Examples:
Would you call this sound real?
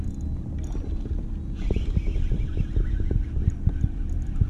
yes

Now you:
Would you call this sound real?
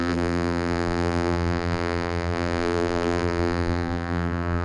no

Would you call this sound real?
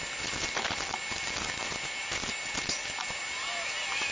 yes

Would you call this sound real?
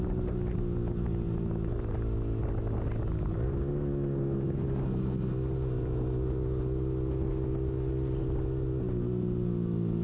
yes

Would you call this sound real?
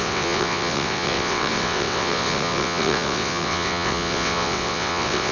no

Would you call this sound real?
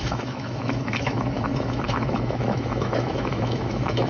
no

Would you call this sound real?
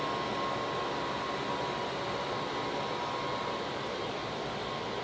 yes